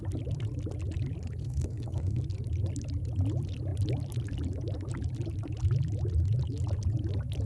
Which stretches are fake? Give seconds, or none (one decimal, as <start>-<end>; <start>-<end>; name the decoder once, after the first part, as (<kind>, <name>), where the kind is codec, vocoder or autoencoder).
1.4-2.2 (codec, SNAC)